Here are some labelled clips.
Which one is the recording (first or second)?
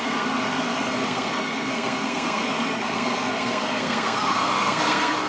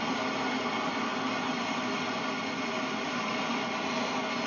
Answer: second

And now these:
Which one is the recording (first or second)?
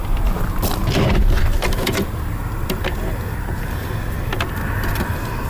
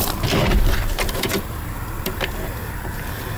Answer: first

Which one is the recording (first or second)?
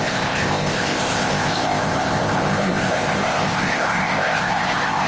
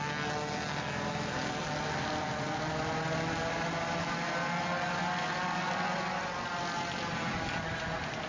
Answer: second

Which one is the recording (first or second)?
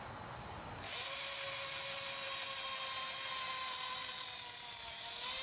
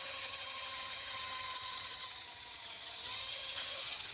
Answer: first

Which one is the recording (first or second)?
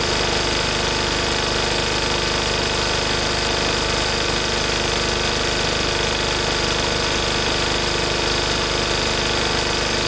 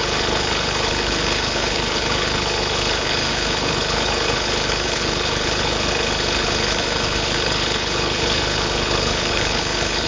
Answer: first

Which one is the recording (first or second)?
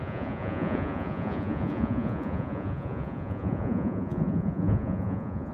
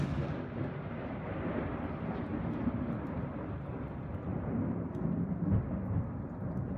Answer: second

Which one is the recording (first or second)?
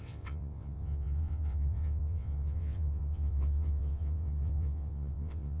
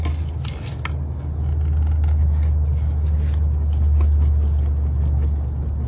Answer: second